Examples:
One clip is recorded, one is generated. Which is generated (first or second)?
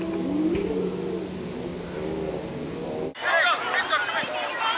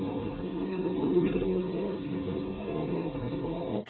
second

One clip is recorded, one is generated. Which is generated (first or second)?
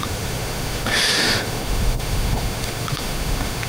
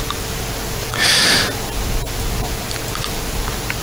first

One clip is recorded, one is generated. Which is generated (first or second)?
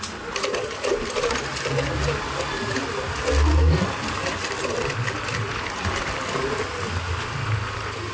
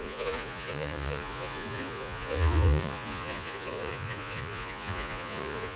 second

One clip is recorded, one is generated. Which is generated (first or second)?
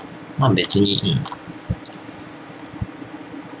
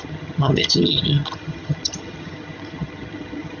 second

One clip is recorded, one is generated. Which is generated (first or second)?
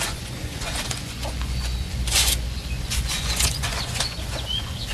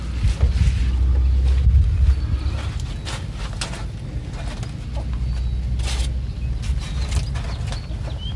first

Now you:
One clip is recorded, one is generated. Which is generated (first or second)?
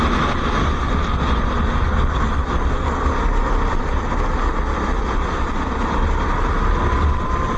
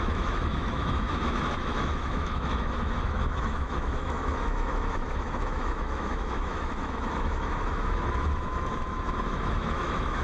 second